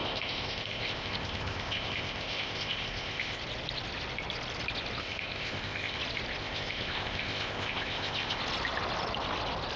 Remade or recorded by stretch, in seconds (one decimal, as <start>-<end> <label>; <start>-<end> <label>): 0.0-3.4 remade; 3.4-5.0 recorded; 5.0-6.0 remade; 6.0-6.4 recorded; 6.4-8.4 remade; 8.4-9.8 recorded